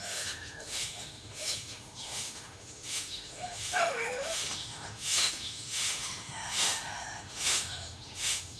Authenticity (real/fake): fake